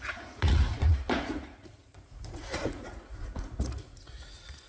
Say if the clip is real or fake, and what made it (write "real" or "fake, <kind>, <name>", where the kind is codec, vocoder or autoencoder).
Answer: fake, vocoder, Vocos